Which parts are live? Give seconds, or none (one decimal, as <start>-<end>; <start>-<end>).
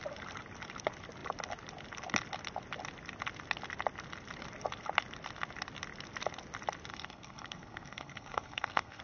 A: 0.0-6.9